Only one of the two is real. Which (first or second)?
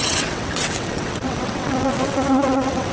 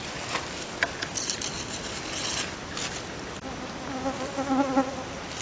second